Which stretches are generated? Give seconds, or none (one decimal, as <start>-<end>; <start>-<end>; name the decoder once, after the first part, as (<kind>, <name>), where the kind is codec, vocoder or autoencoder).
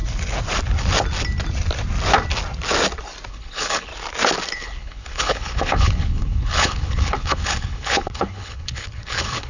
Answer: 3.3-3.9 (codec, HILCodec); 4.5-9.5